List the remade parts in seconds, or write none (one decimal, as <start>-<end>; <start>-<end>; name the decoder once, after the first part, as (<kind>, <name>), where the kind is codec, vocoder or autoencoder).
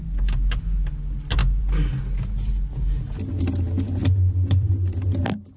4.0-4.7 (vocoder, BigVGAN v2)